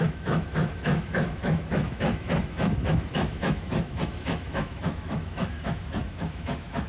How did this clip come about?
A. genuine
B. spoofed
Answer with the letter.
B